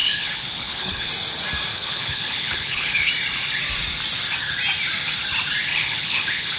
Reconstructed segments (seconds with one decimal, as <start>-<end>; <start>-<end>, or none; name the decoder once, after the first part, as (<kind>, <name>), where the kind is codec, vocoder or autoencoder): 0.0-1.1 (codec, HILCodec); 1.7-3.1; 5.7-6.6